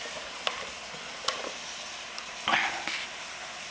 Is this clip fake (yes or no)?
no